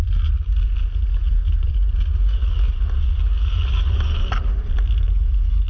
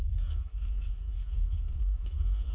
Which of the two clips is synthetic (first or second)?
second